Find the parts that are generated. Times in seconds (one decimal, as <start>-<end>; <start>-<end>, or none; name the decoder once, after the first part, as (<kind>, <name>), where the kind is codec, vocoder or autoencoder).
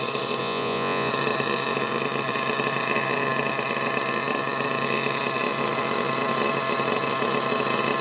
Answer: 0.4-1.1 (vocoder, Vocos)